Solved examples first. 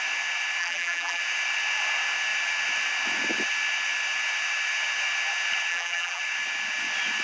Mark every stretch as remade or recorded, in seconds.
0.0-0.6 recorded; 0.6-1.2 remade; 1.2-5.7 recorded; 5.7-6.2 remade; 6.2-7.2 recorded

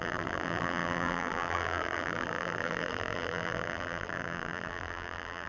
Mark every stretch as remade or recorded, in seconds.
0.0-5.5 remade

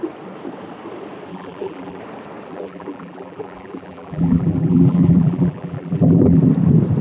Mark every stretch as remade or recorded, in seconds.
0.0-1.3 recorded; 1.3-2.0 remade; 2.0-2.5 recorded; 2.5-6.4 remade; 6.4-7.0 recorded

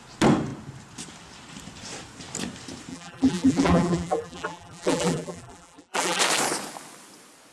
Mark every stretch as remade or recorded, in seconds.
0.0-2.9 recorded; 2.9-6.2 remade; 6.2-7.5 recorded